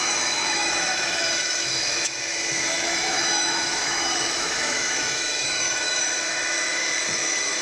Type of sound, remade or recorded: remade